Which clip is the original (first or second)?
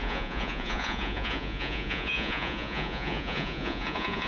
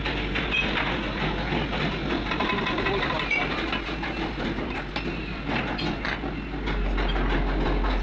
second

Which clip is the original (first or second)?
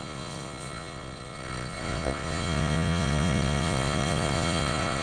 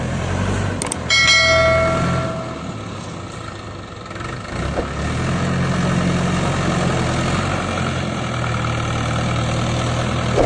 second